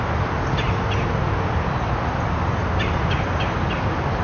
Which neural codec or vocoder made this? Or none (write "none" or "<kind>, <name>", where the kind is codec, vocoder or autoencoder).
none